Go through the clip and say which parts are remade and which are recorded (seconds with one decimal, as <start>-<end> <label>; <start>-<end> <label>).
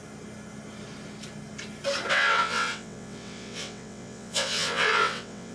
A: 0.0-2.1 recorded; 2.1-5.5 remade